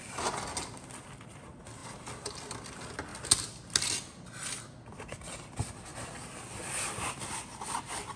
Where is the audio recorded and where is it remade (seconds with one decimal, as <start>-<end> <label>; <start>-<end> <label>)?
0.0-8.2 recorded

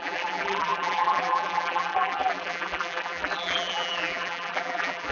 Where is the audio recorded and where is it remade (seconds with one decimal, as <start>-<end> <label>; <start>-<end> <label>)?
0.0-5.1 remade